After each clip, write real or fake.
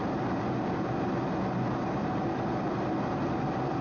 real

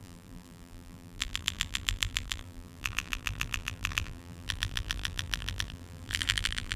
fake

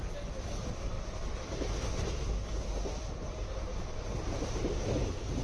real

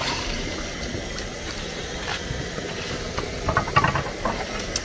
real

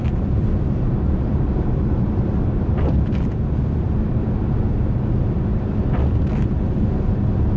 fake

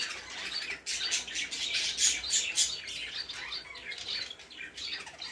real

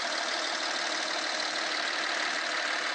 real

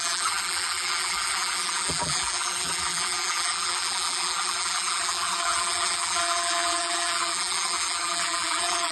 fake